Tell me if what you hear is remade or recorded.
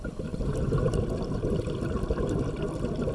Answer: recorded